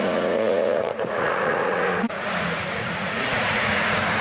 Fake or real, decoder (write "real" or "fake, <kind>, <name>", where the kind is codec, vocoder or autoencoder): fake, vocoder, Vocos